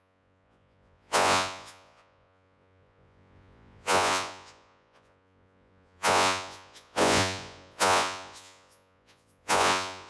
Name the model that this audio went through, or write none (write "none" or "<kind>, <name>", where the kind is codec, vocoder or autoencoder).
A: vocoder, Vocos